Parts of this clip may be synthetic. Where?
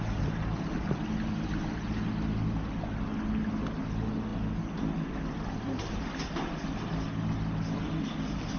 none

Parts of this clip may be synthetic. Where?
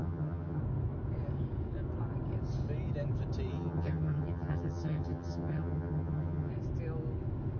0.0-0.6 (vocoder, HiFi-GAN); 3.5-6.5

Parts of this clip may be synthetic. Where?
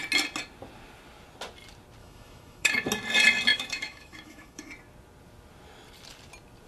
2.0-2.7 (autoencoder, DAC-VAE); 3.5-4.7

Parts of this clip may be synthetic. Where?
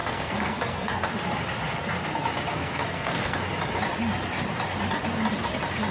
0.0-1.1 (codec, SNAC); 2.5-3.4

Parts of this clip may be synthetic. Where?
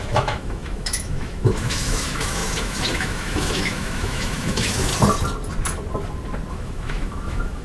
0.0-4.9 (autoencoder, DAC-VAE); 6.5-7.6